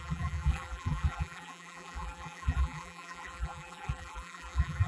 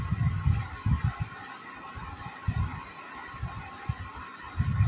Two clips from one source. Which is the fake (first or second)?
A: first